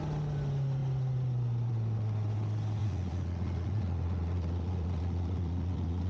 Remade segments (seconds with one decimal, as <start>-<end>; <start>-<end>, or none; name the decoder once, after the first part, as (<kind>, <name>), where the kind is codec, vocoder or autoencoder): 2.8-6.1 (vocoder, Vocos)